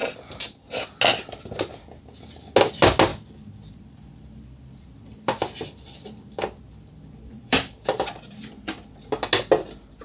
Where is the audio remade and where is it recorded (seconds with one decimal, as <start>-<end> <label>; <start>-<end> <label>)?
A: 0.0-3.1 recorded; 3.1-8.0 remade; 8.0-10.0 recorded